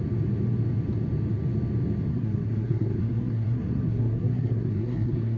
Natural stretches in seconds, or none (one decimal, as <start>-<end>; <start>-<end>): 0.0-2.1